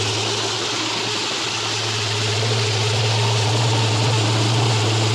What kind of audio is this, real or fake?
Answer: real